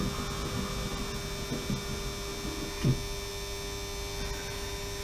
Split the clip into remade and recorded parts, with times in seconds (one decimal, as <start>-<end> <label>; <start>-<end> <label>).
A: 0.0-5.0 recorded